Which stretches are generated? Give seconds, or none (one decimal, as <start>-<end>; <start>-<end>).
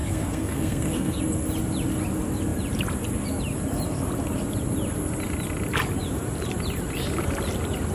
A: 0.0-1.2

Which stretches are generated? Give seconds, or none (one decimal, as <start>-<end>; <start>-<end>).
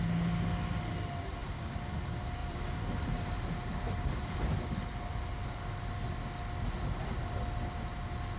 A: 1.4-1.9; 2.4-4.5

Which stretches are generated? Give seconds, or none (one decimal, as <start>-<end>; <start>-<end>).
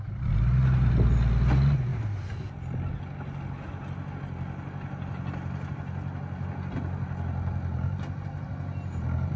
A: none